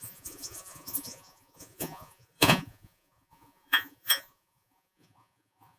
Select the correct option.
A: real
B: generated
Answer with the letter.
B